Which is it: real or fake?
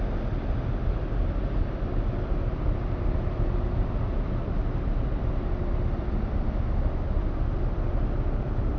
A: fake